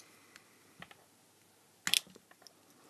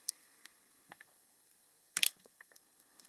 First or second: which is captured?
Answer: first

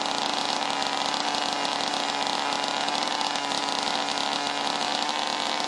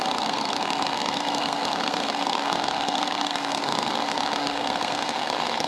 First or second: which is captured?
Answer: first